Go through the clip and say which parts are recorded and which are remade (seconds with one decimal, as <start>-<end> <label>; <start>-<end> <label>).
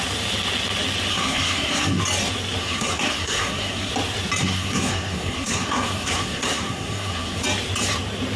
0.0-1.1 recorded; 1.1-2.0 remade; 2.0-2.6 recorded; 2.6-3.9 remade; 3.9-4.4 recorded; 4.4-7.4 remade; 7.4-8.4 recorded